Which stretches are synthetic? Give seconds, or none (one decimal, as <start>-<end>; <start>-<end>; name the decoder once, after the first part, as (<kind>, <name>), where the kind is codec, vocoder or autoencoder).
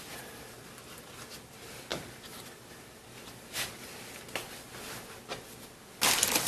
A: none